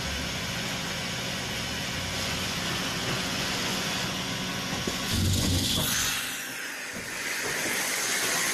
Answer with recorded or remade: remade